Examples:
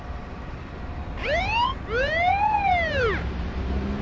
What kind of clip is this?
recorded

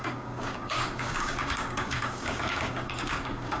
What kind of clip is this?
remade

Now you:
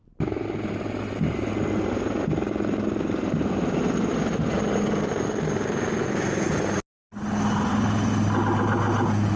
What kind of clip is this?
recorded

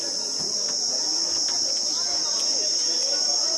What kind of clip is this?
recorded